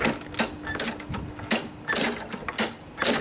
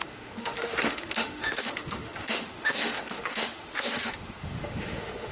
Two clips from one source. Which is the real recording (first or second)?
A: first